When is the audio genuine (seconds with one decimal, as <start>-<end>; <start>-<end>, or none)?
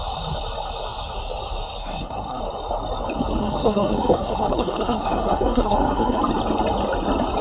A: 0.0-1.8; 2.4-3.4; 6.2-7.4